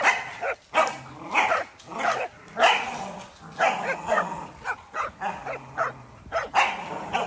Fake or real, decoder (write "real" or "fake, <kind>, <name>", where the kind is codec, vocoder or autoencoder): real